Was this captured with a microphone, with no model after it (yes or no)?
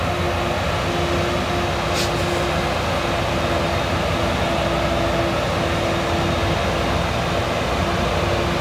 yes